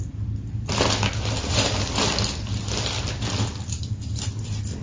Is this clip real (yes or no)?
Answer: yes